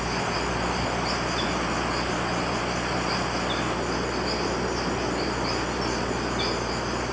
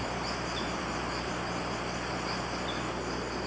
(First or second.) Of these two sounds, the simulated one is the second